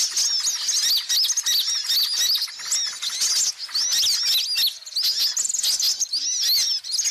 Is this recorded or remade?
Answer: recorded